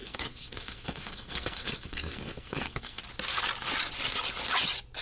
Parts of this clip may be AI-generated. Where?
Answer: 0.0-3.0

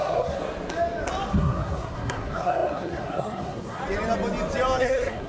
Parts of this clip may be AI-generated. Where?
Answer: 0.0-0.4; 1.3-3.8; 4.8-5.3

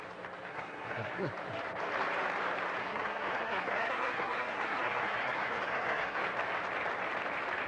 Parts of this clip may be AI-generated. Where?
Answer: 0.5-1.3; 2.8-6.2

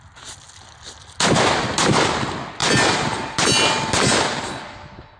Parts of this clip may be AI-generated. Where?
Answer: none

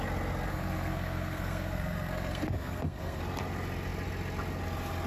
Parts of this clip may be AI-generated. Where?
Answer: 0.5-3.2